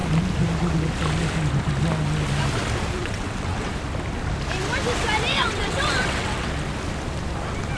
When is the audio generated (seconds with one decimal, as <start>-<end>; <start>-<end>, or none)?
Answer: 3.0-3.7; 5.3-6.5